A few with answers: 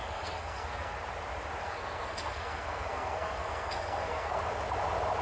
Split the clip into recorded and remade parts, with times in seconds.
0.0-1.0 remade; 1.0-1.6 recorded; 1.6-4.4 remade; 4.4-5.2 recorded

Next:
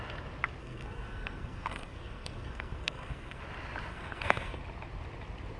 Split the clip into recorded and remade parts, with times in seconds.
0.0-0.6 recorded; 0.6-3.4 remade; 3.4-3.9 recorded; 3.9-4.6 remade; 4.6-5.6 recorded

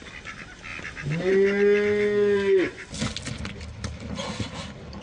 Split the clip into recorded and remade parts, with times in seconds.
0.0-5.0 recorded

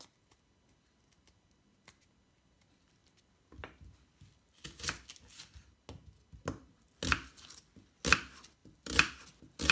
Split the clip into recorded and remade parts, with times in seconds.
0.0-9.7 recorded

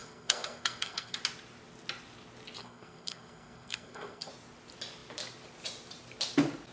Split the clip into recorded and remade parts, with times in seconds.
0.0-1.2 remade; 1.2-2.6 recorded; 2.6-4.3 remade; 4.3-6.7 recorded

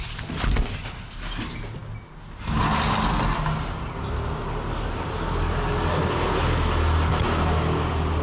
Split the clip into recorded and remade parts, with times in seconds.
0.0-8.2 recorded

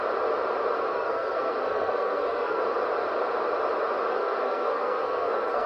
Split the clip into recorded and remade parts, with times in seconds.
0.0-0.9 recorded; 0.9-2.6 remade; 2.6-4.1 recorded; 4.1-5.7 remade